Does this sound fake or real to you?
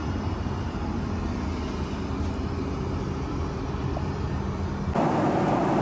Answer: real